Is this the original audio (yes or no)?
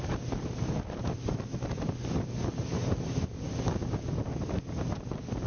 yes